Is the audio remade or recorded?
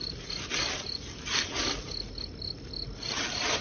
recorded